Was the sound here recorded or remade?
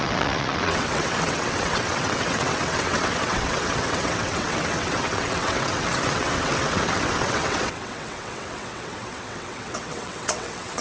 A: remade